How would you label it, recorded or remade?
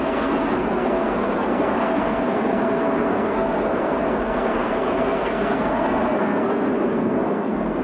remade